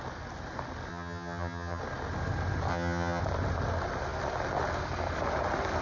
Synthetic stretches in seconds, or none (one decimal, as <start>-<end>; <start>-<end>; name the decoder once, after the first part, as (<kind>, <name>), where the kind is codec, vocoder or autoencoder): 0.9-1.8 (vocoder, HiFi-GAN); 2.7-3.2